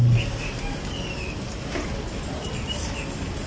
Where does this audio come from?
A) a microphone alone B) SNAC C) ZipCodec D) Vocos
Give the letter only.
A